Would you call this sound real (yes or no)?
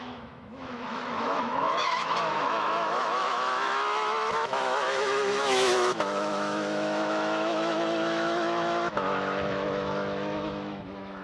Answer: no